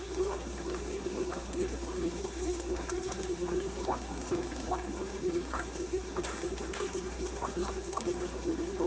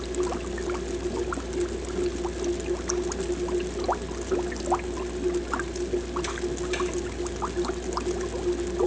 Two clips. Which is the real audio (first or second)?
second